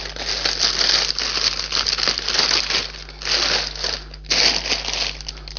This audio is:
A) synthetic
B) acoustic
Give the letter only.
B